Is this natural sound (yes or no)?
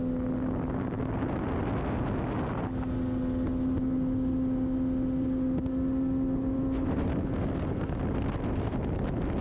yes